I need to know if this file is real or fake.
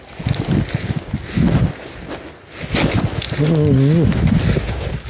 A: real